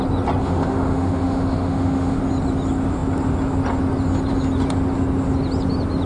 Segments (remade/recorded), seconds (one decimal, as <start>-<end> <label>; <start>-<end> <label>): 0.0-0.4 recorded; 0.4-2.2 remade; 2.2-6.1 recorded